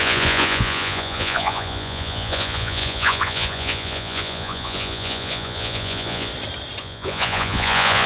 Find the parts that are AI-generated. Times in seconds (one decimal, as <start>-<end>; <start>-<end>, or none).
0.0-6.3; 6.8-8.1